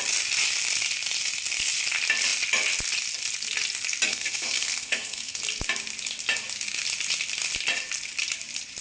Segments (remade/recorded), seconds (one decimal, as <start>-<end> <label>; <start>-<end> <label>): 0.0-4.1 recorded; 4.1-5.4 remade; 5.4-8.8 recorded